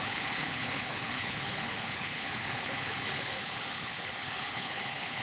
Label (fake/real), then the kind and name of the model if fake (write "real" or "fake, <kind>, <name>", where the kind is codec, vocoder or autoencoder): fake, codec, HILCodec